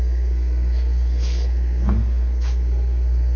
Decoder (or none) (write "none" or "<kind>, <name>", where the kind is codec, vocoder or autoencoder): codec, SNAC